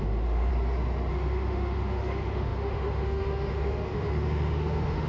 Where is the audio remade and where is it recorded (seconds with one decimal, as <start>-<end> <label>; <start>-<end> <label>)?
0.0-0.5 remade; 0.5-1.1 recorded; 1.1-5.1 remade